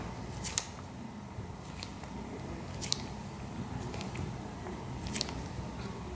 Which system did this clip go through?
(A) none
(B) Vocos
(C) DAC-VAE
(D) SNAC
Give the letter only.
A